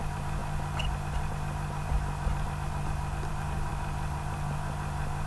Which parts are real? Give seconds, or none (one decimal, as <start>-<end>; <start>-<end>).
0.0-5.3